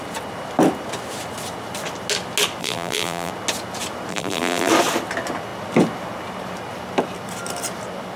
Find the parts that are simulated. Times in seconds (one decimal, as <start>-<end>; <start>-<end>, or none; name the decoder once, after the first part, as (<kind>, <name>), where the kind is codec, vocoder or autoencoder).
2.6-3.3 (vocoder, BigVGAN v2); 4.1-4.7